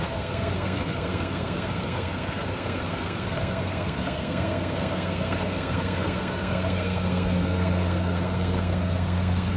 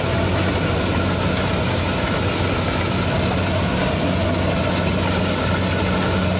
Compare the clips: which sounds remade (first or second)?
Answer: first